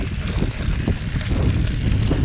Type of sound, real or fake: real